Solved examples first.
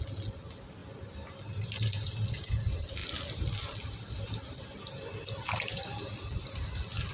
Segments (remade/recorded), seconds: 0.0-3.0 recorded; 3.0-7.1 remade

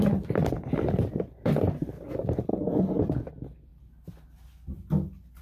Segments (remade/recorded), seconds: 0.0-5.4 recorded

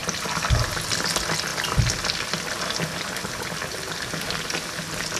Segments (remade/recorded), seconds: 0.0-5.2 recorded

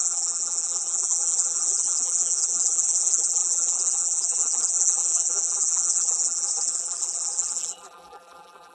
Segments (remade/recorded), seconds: 0.0-8.7 remade

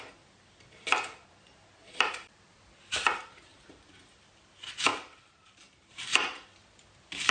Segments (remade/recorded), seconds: 0.0-1.8 recorded; 1.8-2.6 remade; 2.6-3.5 recorded; 3.5-4.2 remade; 4.2-4.9 recorded; 4.9-5.9 remade; 5.9-7.3 recorded